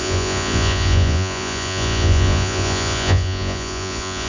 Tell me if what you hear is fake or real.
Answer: fake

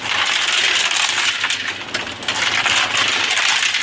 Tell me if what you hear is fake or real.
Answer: real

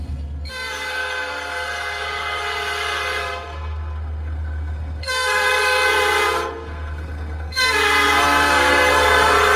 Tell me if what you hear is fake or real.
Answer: fake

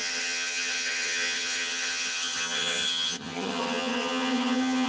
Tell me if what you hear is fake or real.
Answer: fake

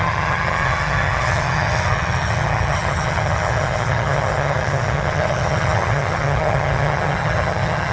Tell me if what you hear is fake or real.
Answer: fake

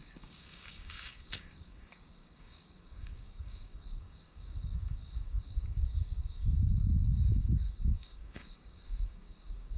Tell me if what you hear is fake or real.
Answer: fake